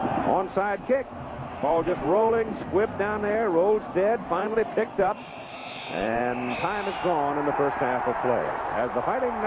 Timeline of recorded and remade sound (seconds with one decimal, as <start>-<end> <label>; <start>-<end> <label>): 0.0-1.6 recorded; 1.6-2.3 remade; 2.3-4.4 recorded; 4.4-6.2 remade; 6.2-9.5 recorded